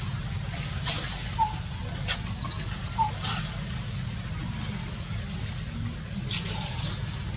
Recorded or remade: recorded